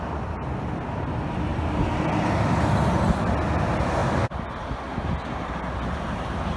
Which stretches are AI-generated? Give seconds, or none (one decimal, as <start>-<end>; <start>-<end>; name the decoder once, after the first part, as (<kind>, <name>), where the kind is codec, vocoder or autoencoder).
none